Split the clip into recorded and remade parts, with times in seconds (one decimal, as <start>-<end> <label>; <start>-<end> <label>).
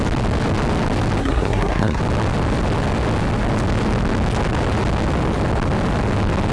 0.0-1.2 recorded; 1.2-2.0 remade; 2.0-6.5 recorded